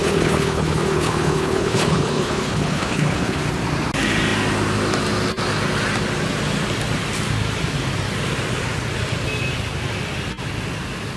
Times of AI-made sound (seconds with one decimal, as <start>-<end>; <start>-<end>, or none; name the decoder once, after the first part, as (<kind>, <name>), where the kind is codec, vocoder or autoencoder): 0.0-3.4 (codec, HILCodec)

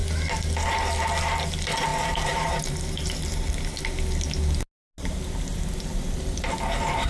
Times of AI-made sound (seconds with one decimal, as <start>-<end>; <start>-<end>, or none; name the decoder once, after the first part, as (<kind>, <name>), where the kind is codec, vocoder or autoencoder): 1.9-3.5 (vocoder, BigVGAN v2)

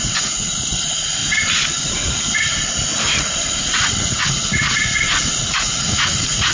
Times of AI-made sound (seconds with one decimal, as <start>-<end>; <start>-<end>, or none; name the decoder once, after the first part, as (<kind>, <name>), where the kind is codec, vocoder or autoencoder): 0.0-1.2 (vocoder, Vocos); 1.7-2.5; 3.1-6.5

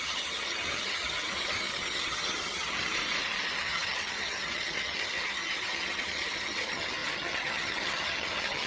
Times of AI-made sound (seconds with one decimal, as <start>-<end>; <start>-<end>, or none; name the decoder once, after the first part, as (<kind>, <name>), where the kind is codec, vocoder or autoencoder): 0.0-3.0 (vocoder, HiFi-GAN); 3.6-8.7

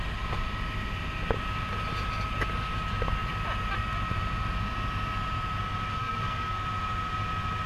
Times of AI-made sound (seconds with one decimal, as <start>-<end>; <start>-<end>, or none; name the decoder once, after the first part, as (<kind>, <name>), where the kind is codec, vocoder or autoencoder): 5.9-6.6 (codec, SNAC)